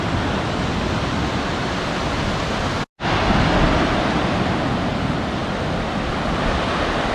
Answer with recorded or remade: recorded